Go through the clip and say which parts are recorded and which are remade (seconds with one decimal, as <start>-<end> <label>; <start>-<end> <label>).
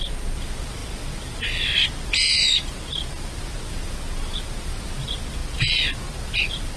0.0-6.8 recorded